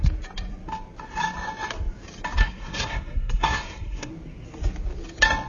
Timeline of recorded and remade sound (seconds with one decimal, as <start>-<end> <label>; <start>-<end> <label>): 0.0-2.4 recorded; 2.4-4.1 remade; 4.1-5.5 recorded